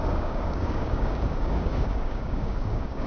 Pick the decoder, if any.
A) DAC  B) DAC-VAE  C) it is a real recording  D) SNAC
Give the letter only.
A